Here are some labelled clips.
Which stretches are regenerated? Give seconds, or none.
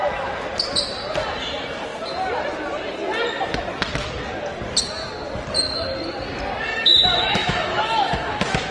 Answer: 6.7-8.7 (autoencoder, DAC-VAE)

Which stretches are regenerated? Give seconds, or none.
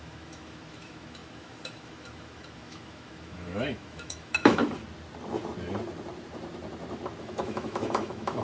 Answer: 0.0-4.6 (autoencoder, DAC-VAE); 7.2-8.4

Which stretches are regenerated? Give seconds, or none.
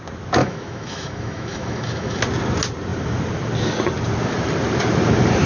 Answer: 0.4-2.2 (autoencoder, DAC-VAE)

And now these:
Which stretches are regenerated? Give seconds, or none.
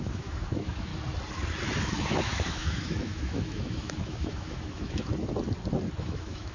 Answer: 0.0-0.9 (autoencoder, DAC-VAE); 1.8-5.1; 6.0-6.5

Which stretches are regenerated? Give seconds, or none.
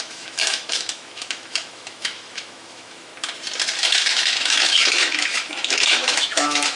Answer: 0.0-3.1 (autoencoder, DAC-VAE); 3.8-6.8